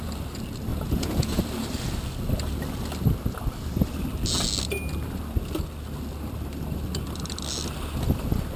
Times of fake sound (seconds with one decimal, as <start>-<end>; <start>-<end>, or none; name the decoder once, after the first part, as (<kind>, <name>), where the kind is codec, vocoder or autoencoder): 0.7-1.4 (vocoder, Vocos)